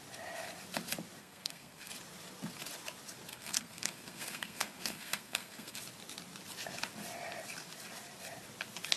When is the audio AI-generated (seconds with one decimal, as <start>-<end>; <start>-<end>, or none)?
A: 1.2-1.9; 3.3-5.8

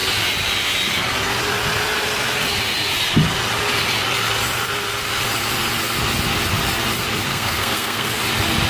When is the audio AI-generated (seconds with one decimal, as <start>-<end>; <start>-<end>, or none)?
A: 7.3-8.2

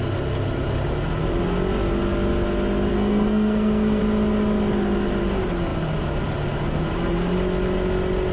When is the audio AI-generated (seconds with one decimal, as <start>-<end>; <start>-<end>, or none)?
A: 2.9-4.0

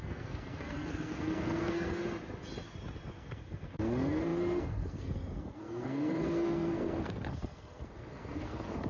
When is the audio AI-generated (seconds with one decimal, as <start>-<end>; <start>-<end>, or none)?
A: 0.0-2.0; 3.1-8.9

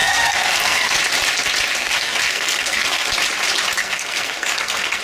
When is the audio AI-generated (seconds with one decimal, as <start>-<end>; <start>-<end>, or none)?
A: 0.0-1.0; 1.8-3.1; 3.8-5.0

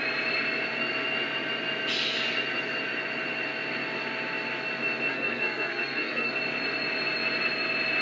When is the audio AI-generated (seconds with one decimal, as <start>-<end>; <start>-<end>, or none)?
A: 5.1-6.3

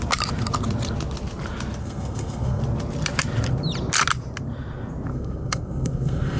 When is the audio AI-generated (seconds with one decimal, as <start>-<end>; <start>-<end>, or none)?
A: 1.8-2.6; 5.1-6.4

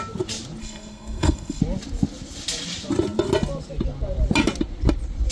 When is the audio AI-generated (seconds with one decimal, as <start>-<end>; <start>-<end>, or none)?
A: 0.6-1.6